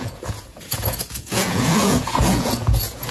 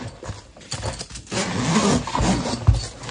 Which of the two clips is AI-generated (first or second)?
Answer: first